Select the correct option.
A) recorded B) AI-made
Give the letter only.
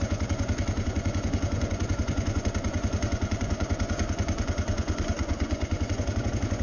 B